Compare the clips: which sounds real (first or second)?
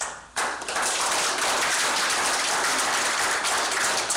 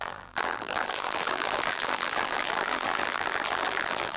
first